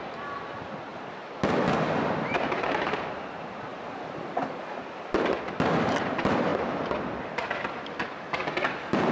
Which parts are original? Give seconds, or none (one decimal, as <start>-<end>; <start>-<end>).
0.0-9.1